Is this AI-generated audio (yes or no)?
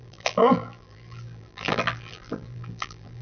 yes